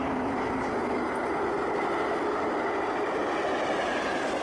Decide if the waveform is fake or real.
real